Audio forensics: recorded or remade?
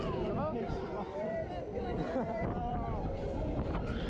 remade